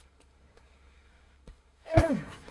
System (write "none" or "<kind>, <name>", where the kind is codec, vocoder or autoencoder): codec, SNAC